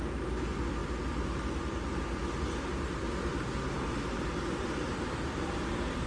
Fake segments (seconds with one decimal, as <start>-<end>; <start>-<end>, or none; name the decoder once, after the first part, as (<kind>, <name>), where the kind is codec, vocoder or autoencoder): none